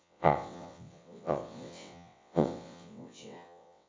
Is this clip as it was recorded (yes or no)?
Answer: no